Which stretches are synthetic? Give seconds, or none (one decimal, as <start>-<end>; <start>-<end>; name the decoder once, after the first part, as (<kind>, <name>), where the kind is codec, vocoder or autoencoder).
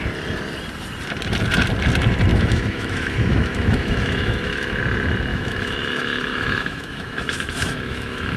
2.3-4.8 (autoencoder, DAC-VAE); 5.3-8.4